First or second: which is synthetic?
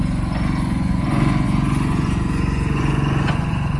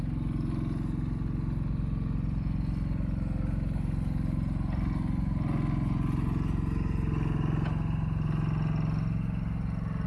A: first